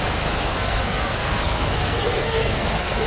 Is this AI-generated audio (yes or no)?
yes